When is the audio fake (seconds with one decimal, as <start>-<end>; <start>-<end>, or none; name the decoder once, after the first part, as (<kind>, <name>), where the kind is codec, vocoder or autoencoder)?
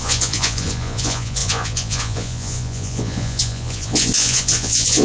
0.0-5.0 (vocoder, Vocos)